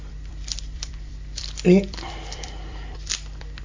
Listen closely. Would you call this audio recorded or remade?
remade